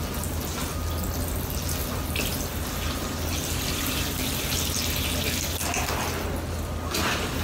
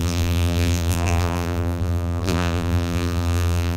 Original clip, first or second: first